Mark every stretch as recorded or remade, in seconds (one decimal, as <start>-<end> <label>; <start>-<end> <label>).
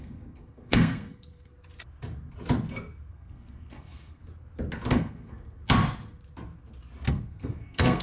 0.0-1.5 remade; 1.5-3.1 recorded; 3.1-4.2 remade; 4.2-4.9 recorded; 4.9-5.6 remade; 5.6-7.1 recorded; 7.1-8.0 remade